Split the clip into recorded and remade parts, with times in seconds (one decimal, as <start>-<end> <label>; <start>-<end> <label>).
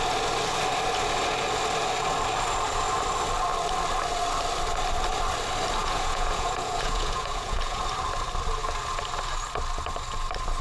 0.0-5.8 recorded; 5.8-7.8 remade; 7.8-10.6 recorded